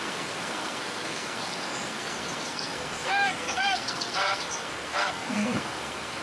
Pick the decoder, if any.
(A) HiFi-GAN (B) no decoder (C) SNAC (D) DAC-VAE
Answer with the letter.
C